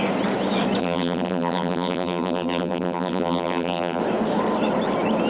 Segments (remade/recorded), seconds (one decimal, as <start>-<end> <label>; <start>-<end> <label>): 0.0-0.8 recorded; 0.8-4.0 remade; 4.0-5.3 recorded